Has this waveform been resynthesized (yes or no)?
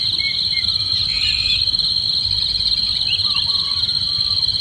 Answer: no